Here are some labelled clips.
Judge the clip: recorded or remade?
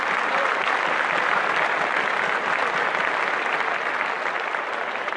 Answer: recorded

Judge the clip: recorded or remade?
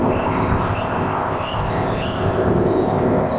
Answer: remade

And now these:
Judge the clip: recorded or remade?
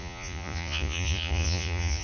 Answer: remade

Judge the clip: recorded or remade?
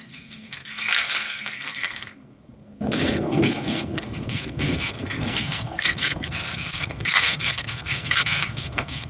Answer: remade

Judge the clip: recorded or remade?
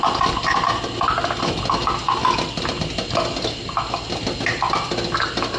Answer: recorded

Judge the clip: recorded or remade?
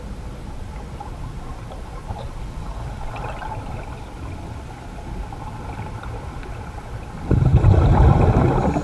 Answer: recorded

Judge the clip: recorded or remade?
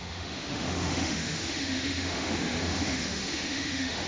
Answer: remade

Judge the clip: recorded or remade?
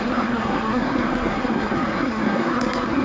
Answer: remade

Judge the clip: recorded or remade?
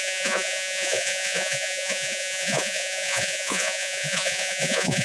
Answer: remade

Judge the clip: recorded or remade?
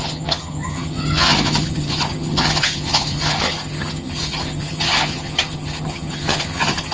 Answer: remade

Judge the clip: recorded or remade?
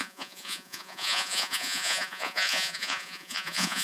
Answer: remade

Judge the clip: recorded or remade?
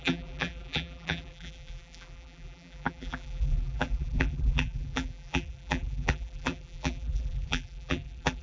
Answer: remade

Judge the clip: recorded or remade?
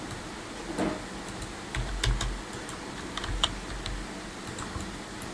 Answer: recorded